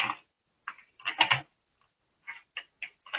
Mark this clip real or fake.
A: real